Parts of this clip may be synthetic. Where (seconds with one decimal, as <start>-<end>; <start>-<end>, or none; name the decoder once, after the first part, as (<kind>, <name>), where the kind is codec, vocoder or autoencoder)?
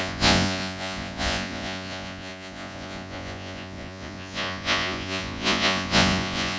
0.0-6.6 (vocoder, Vocos)